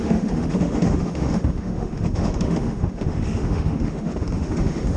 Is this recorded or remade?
remade